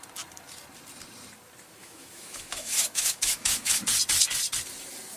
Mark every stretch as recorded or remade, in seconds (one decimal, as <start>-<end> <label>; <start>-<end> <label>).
0.0-1.8 recorded; 1.8-3.8 remade; 3.8-5.2 recorded